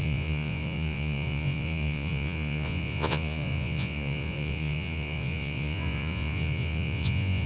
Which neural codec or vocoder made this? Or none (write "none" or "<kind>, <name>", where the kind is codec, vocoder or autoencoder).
vocoder, Vocos